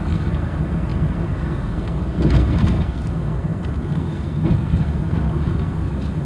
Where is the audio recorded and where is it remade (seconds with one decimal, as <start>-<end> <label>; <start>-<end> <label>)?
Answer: 0.0-6.2 remade